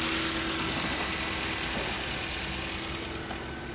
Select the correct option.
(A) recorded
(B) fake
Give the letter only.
A